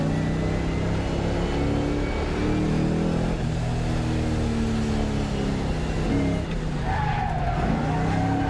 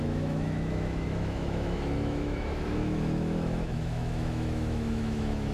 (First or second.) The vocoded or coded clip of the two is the second